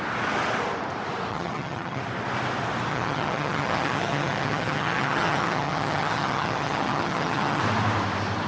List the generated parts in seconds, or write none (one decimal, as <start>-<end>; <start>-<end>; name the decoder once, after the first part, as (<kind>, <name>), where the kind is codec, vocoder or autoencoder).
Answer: 1.3-2.0 (vocoder, HiFi-GAN); 2.9-7.6